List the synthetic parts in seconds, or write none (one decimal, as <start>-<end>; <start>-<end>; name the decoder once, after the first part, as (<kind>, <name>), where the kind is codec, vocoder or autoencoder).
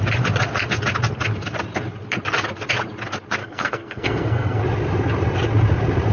3.4-4.6 (codec, SNAC)